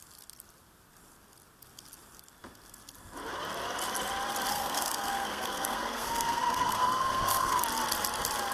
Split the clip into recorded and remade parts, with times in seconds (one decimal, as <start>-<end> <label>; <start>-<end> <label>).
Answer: 0.0-4.5 recorded; 4.5-7.6 remade; 7.6-8.5 recorded